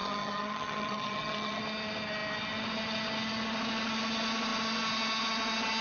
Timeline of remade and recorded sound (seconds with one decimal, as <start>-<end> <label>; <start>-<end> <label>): 0.0-1.6 remade; 1.6-5.8 recorded